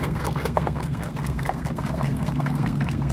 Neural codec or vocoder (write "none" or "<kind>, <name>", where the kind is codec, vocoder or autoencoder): codec, SNAC